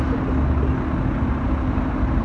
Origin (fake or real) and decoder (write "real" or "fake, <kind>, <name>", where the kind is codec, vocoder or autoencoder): real